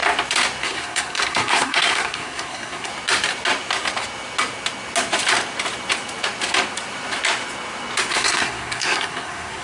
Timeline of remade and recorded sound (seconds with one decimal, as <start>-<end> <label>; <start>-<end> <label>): 0.0-0.6 recorded; 0.6-2.9 remade; 2.9-8.1 recorded; 8.1-9.6 remade